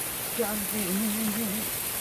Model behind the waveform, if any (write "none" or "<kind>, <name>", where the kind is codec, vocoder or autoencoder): none